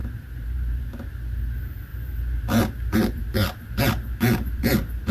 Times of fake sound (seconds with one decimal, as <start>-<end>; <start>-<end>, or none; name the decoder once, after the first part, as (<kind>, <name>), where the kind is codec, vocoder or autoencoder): 0.0-0.8 (vocoder, BigVGAN v2); 1.9-5.1